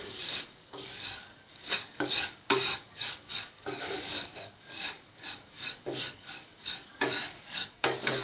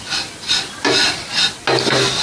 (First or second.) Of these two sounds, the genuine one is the second